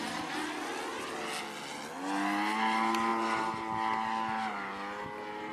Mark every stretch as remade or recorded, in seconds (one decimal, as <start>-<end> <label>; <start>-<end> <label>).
0.0-5.5 recorded

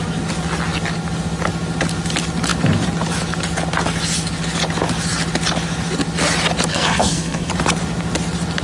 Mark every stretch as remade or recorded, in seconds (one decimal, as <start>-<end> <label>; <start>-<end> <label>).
0.0-6.7 recorded; 6.7-7.5 remade; 7.5-8.6 recorded

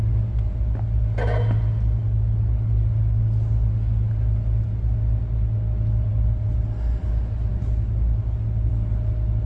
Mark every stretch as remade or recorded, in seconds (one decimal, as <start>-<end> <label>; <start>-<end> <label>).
0.0-9.5 recorded

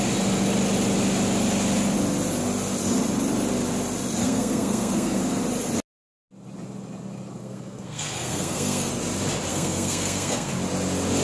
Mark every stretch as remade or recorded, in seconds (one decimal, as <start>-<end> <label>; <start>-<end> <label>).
0.0-4.2 recorded; 4.2-5.2 remade; 5.2-7.4 recorded; 7.4-8.9 remade; 8.9-9.5 recorded; 9.5-10.5 remade; 10.5-11.2 recorded

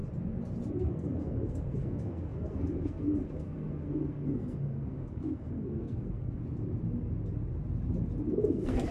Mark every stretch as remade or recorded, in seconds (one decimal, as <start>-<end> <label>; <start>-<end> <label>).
0.0-0.7 recorded; 0.7-6.4 remade; 6.4-8.3 recorded; 8.3-8.9 remade

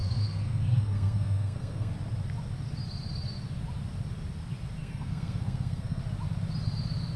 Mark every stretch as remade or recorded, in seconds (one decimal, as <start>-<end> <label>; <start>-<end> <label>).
0.0-1.9 remade; 1.9-4.8 recorded; 4.8-6.0 remade; 6.0-7.2 recorded